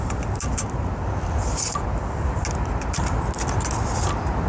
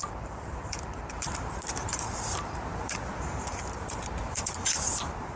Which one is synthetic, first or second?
second